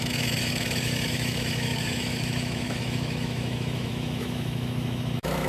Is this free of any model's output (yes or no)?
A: no